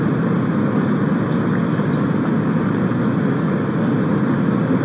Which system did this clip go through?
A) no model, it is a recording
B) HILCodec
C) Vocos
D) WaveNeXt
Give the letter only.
A